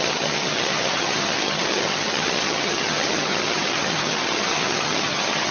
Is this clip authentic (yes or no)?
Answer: no